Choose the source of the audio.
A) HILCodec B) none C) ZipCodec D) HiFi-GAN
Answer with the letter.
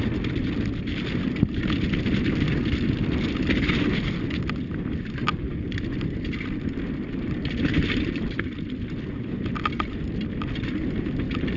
B